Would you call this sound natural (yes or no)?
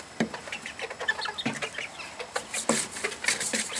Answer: yes